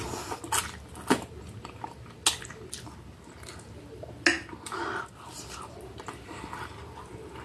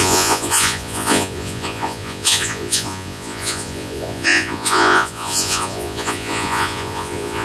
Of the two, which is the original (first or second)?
first